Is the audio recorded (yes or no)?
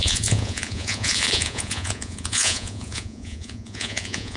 no